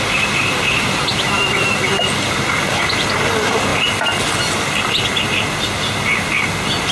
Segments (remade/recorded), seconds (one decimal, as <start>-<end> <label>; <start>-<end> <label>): 0.0-6.9 recorded